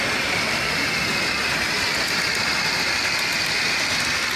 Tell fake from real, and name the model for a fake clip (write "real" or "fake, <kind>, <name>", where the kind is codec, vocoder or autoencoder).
real